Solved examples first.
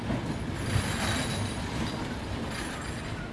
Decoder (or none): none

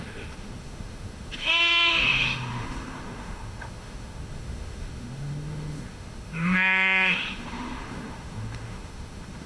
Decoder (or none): autoencoder, DAC-VAE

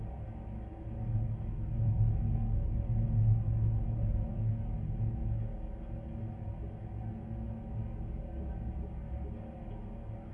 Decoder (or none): none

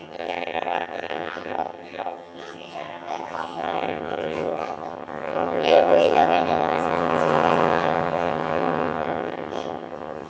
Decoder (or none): vocoder, HiFi-GAN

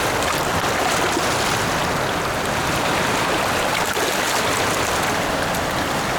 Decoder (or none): none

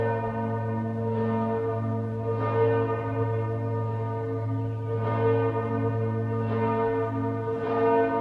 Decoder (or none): none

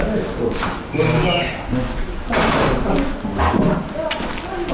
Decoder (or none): none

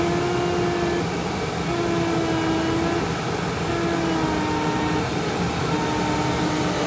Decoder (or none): none